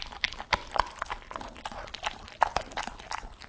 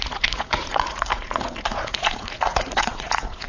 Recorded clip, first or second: first